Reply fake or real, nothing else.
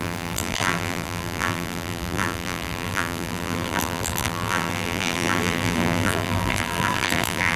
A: fake